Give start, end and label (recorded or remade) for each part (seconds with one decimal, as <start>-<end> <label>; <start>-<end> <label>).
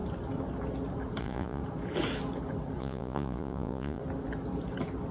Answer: 0.0-1.2 recorded; 1.2-1.6 remade; 1.6-2.8 recorded; 2.8-4.0 remade; 4.0-5.1 recorded